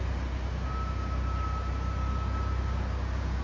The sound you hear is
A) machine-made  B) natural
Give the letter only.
B